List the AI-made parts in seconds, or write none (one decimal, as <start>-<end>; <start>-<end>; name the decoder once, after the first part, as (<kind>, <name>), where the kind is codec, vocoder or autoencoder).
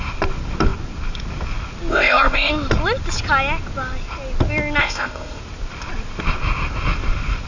1.9-2.5 (codec, ZipCodec); 4.8-5.4